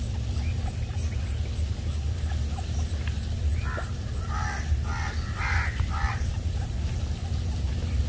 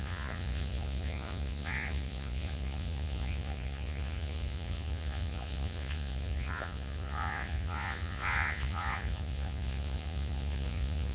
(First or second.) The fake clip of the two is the second